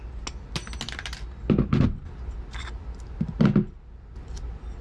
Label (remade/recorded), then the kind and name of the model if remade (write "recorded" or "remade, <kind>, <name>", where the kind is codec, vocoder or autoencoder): recorded